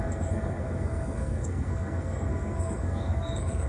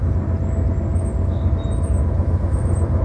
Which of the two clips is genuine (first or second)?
second